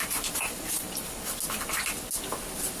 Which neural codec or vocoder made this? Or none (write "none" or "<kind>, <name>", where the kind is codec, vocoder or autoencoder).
none